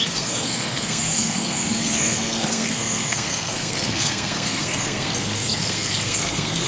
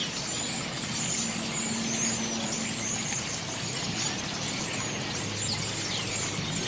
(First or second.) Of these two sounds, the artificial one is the first